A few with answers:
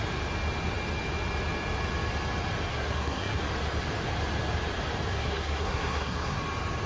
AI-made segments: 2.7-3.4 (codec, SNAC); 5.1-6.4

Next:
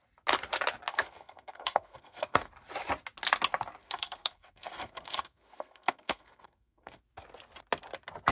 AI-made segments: 0.9-2.5 (codec, SNAC); 3.8-7.0